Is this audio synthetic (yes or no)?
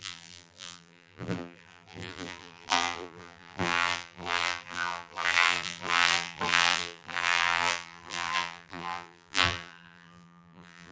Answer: yes